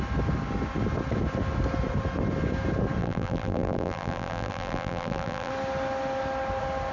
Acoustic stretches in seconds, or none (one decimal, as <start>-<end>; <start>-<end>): 0.0-3.0; 5.5-6.9